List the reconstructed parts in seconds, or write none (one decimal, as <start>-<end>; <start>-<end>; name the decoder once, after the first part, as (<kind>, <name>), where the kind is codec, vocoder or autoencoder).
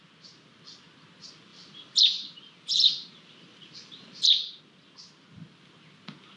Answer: 1.5-4.6 (vocoder, BigVGAN v2)